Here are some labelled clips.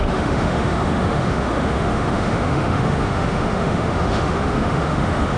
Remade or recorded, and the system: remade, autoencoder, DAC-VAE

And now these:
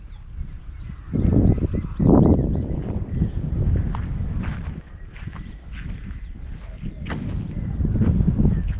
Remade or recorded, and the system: remade, vocoder, BigVGAN v2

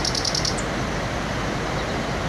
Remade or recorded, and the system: recorded